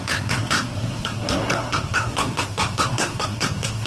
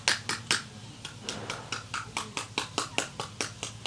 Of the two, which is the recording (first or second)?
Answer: second